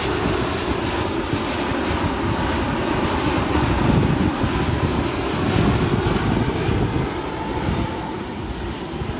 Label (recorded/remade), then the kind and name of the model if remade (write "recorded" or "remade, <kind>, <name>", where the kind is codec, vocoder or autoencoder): recorded